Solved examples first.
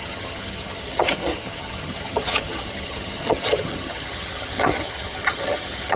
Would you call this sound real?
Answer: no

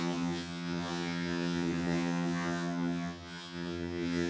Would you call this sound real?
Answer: no